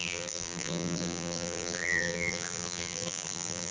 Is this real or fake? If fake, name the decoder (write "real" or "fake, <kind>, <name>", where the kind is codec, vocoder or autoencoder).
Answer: fake, vocoder, BigVGAN v2